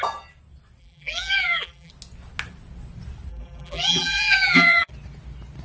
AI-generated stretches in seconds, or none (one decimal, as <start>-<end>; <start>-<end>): 0.8-1.9; 3.3-4.9